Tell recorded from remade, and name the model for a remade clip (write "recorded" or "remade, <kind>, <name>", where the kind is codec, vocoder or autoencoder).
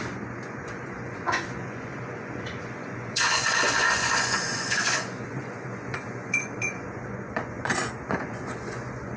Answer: remade, vocoder, Vocos